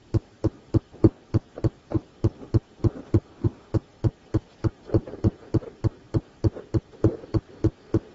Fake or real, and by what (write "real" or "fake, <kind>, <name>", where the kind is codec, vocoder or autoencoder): real